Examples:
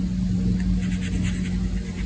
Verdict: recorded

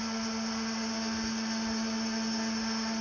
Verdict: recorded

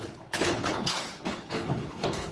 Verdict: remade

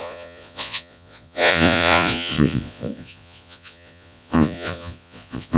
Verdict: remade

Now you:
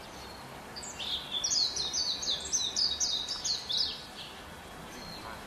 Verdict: recorded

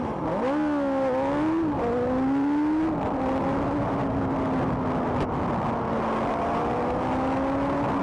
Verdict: recorded